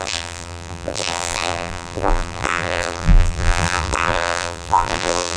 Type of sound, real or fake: fake